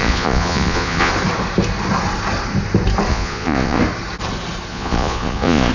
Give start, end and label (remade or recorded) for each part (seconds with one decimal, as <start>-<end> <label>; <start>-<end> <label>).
0.0-1.1 remade; 1.1-3.1 recorded; 3.1-3.8 remade; 3.8-4.7 recorded; 4.7-5.7 remade